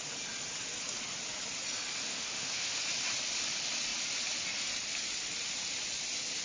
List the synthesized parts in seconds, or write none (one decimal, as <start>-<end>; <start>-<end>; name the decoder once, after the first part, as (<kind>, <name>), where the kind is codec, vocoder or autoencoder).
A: 2.1-2.8 (autoencoder, DAC-VAE)